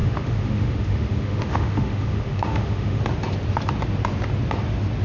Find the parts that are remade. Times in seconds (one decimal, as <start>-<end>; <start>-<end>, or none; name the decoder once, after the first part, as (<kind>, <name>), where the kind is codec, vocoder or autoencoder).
0.0-3.0 (autoencoder, DAC-VAE)